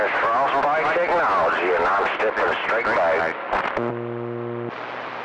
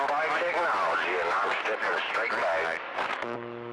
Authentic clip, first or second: first